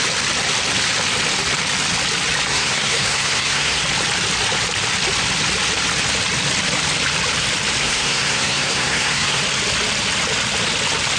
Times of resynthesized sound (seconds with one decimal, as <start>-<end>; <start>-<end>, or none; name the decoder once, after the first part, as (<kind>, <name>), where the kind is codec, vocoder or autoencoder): 2.5-3.8 (codec, SNAC); 7.8-9.4